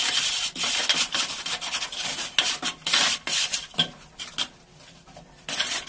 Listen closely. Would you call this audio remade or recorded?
recorded